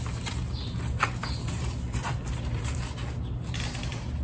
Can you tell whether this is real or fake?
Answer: real